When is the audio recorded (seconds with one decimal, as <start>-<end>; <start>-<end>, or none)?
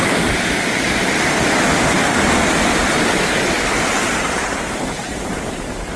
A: 0.0-3.6